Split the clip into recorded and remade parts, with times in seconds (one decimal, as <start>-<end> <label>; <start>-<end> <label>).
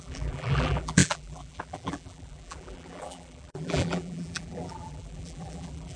0.0-6.0 remade